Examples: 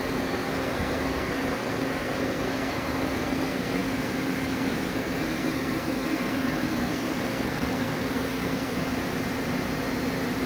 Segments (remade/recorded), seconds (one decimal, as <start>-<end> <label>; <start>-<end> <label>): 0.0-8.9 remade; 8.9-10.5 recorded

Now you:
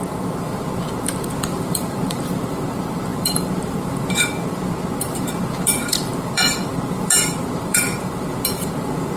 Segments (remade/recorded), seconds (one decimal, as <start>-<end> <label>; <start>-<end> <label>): 0.0-9.2 remade

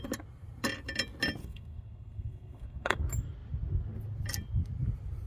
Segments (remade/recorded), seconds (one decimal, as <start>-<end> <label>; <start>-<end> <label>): 0.0-1.4 recorded; 1.4-3.0 remade; 3.0-5.3 recorded

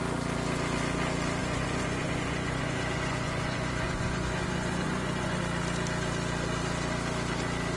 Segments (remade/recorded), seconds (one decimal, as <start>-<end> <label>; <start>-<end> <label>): 0.0-1.4 recorded; 1.4-5.4 remade; 5.4-7.8 recorded

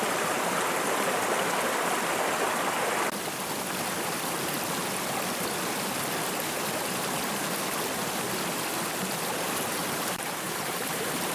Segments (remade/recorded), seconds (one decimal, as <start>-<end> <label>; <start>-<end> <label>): 0.0-9.8 recorded; 9.8-11.3 remade